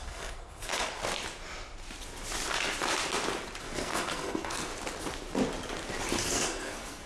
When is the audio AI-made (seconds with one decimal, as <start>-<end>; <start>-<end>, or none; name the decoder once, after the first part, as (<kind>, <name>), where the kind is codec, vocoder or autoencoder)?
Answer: 0.0-1.0 (codec, SNAC); 3.6-4.7; 6.2-7.1